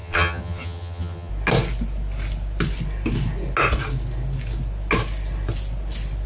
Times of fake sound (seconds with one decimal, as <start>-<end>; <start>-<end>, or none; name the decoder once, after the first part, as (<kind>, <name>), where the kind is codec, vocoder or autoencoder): 0.0-1.3 (vocoder, HiFi-GAN)